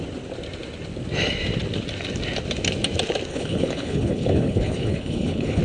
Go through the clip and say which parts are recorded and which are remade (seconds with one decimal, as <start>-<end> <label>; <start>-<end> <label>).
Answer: 0.0-3.3 recorded; 3.3-5.6 remade

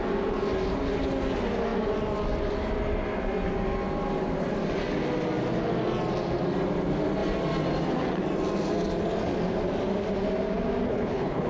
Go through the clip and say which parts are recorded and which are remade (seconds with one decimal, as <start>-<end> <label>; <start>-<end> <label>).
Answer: 0.0-10.9 recorded; 10.9-11.5 remade

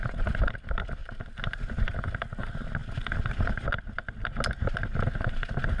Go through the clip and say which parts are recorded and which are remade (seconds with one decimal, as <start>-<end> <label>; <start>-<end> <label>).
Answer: 0.0-5.8 recorded

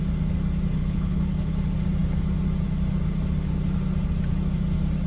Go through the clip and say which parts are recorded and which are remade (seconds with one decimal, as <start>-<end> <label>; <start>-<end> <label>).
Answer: 0.0-0.8 recorded; 0.8-1.5 remade; 1.5-5.1 recorded

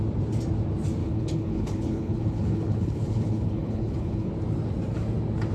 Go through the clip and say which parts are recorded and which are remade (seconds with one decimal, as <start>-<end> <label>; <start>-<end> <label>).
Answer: 0.0-1.0 recorded; 1.0-4.3 remade; 4.3-5.5 recorded

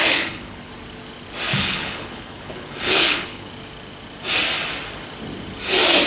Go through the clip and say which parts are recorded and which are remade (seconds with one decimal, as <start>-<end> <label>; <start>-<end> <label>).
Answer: 0.0-0.7 remade; 0.7-1.5 recorded; 1.5-3.5 remade; 3.5-6.1 recorded

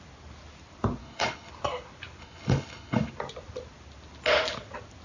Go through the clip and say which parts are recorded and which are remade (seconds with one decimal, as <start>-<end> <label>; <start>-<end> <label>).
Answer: 0.0-1.0 recorded; 1.0-1.5 remade; 1.5-2.2 recorded; 2.2-3.1 remade; 3.1-5.0 recorded

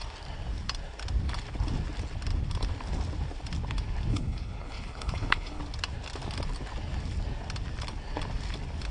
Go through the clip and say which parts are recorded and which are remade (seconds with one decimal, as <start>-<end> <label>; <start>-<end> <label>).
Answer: 0.0-4.1 recorded; 4.1-5.6 remade; 5.6-8.9 recorded